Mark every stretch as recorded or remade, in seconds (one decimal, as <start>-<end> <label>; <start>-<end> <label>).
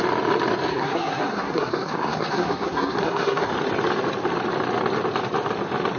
0.0-0.7 recorded; 0.7-3.5 remade; 3.5-6.0 recorded